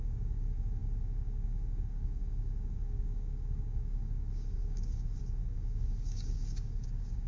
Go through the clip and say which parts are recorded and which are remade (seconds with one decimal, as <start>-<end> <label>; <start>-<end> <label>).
0.0-7.3 remade